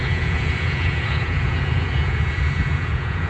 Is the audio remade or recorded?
remade